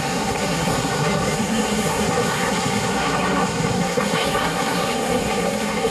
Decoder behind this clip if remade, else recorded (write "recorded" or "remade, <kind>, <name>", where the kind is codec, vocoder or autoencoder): remade, codec, SNAC